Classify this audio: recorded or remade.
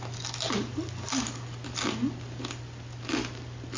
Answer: recorded